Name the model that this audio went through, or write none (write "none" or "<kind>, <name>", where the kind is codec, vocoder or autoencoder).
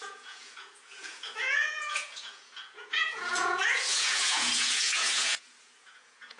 vocoder, Vocos